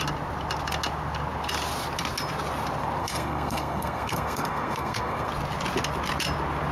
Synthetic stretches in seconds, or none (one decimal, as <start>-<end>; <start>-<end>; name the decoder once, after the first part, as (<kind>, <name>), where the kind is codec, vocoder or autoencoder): 3.0-5.3 (codec, SNAC)